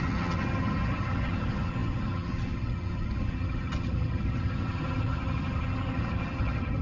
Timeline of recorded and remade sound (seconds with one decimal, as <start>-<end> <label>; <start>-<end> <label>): 0.0-6.8 remade